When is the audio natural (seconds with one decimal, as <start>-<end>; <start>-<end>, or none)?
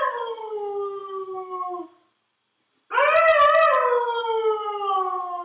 0.0-5.4